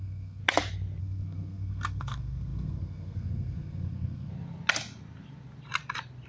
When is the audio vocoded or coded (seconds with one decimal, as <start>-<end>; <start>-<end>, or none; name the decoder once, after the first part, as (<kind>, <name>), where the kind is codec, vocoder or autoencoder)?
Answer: 0.0-0.4 (codec, SNAC); 1.0-4.3